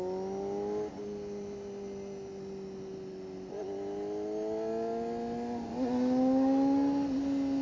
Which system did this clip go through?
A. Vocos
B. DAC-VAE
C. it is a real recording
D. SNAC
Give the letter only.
C